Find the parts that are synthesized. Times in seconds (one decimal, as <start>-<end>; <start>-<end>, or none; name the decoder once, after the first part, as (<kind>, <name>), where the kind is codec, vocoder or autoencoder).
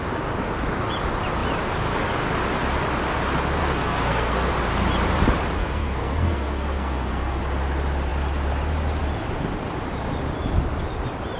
3.6-4.5 (codec, SNAC); 5.6-7.4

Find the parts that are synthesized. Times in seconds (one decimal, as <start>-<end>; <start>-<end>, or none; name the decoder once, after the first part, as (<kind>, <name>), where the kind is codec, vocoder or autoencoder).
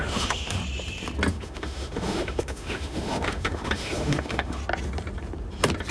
0.0-0.6 (autoencoder, DAC-VAE); 1.3-4.6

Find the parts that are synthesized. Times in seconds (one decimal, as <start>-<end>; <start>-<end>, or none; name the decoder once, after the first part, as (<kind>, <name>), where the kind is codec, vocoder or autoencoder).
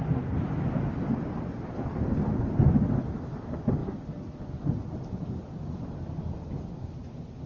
none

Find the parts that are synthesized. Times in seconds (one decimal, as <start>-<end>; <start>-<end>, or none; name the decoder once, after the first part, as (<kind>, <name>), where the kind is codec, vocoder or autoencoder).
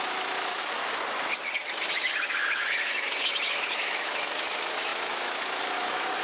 0.0-0.8 (autoencoder, DAC-VAE); 1.9-6.2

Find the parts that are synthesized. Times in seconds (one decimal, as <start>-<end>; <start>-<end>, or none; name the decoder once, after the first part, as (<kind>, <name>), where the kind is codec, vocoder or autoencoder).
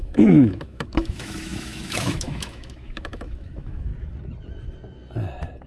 0.0-3.9 (autoencoder, DAC-VAE)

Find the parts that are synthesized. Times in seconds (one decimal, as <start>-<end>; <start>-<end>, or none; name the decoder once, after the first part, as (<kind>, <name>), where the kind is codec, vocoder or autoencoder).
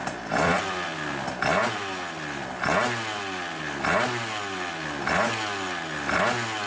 none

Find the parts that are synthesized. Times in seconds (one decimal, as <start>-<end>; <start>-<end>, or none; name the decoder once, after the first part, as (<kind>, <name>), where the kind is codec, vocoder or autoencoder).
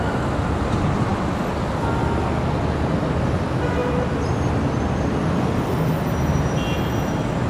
3.8-4.4 (vocoder, BigVGAN v2)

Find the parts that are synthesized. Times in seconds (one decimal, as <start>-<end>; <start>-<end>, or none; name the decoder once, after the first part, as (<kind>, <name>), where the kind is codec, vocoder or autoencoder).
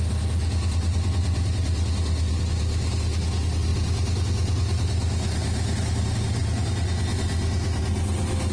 none